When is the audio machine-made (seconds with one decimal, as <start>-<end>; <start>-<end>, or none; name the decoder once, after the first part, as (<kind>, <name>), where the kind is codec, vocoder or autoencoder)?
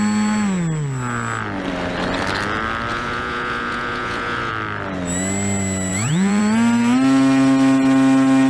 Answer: 2.9-4.5 (vocoder, Vocos); 5.9-6.4